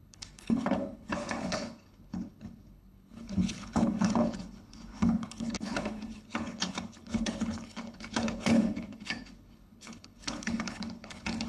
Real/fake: fake